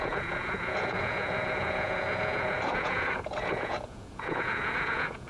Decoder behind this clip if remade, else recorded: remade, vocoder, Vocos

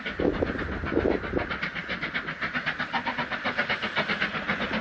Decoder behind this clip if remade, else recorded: recorded